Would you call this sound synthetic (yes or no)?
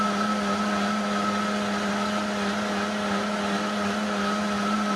no